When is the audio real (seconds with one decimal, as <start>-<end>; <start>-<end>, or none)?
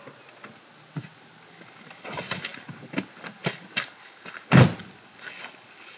0.0-6.0